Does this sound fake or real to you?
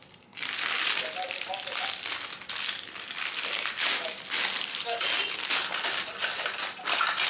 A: real